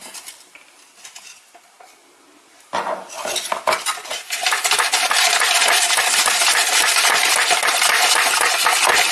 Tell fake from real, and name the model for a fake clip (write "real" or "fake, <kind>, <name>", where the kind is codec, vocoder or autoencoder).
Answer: real